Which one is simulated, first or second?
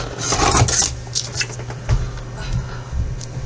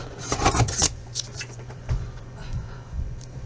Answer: second